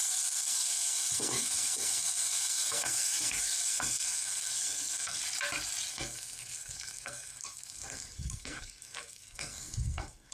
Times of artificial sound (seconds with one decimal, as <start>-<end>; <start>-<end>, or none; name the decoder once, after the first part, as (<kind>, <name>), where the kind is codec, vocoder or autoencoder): 0.0-5.2 (codec, SNAC); 5.9-10.3